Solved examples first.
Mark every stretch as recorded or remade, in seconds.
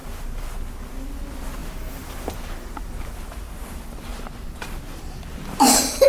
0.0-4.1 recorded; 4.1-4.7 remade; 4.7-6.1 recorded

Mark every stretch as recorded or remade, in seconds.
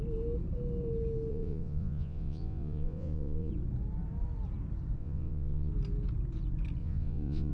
0.0-1.3 recorded; 1.3-3.5 remade; 3.5-5.0 recorded; 5.0-5.7 remade; 5.7-6.8 recorded; 6.8-7.5 remade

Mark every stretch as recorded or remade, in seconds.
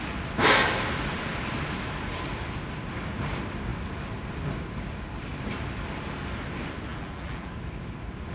0.0-6.9 recorded; 6.9-7.5 remade; 7.5-8.3 recorded